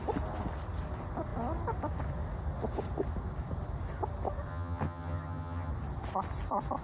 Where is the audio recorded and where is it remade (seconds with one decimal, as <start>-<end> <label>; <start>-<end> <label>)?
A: 0.0-4.5 recorded; 4.5-5.7 remade; 5.7-6.8 recorded